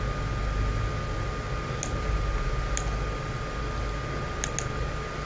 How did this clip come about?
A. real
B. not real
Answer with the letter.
A